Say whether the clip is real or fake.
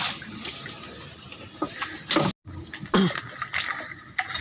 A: real